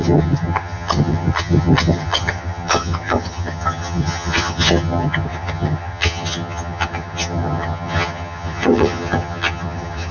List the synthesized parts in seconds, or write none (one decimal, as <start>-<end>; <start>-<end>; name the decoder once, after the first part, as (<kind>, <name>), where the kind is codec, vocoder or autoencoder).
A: 0.0-10.1 (vocoder, HiFi-GAN)